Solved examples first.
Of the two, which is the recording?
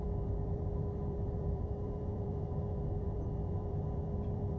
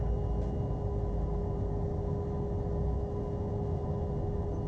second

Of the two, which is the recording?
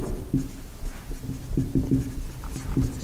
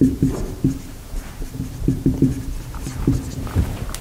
first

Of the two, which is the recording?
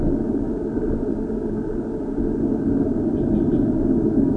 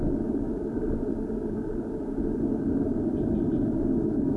first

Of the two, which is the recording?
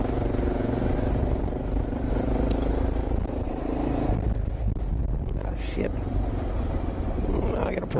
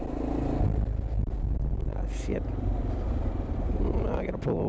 second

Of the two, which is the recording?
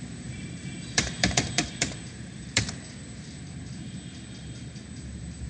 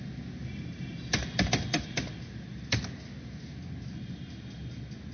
second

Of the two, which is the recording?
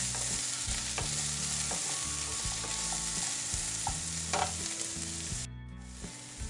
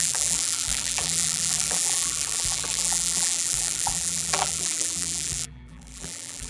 first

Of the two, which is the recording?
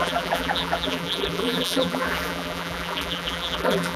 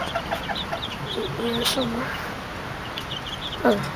second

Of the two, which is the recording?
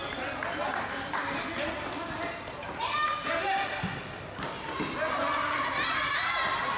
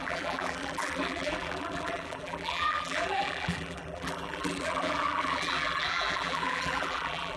first